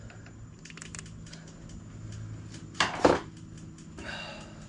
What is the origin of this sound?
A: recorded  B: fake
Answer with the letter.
A